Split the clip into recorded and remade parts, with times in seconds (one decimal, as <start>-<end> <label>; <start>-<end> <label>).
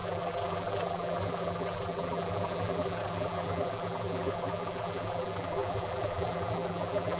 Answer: 0.0-7.2 remade